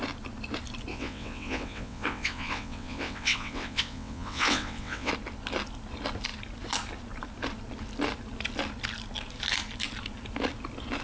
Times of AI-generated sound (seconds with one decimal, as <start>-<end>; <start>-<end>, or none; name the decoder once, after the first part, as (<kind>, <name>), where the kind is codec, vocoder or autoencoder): 0.9-5.1 (vocoder, WaveNeXt)